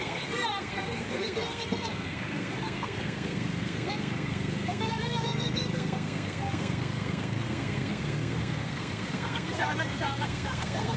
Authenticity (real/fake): fake